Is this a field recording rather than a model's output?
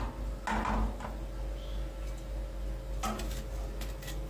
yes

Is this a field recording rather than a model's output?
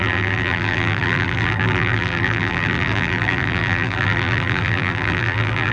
no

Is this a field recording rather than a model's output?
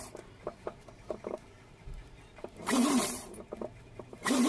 no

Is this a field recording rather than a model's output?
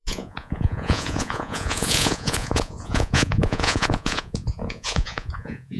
no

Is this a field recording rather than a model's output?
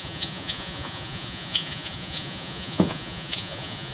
no